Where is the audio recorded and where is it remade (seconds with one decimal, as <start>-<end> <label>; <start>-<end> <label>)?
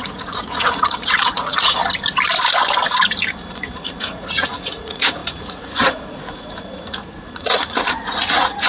0.0-1.8 remade; 1.8-3.5 recorded; 3.5-8.7 remade